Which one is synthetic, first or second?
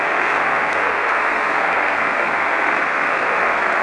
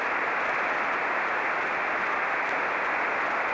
first